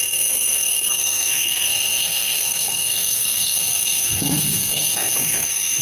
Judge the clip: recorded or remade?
remade